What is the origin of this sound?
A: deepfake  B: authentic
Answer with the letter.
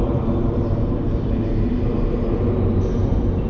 B